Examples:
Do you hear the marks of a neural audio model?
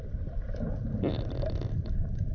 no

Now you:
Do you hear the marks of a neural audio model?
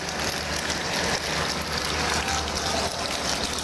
no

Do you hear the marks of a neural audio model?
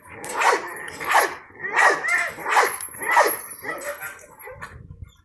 no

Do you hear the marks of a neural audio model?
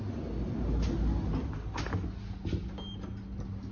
no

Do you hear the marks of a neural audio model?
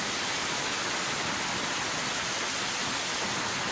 no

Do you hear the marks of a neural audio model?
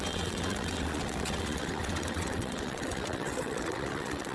yes